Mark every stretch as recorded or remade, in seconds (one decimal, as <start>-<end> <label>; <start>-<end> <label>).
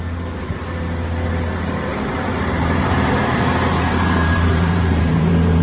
0.0-1.9 recorded; 1.9-5.6 remade